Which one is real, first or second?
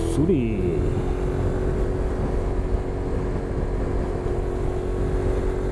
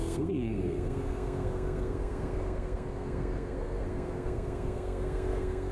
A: first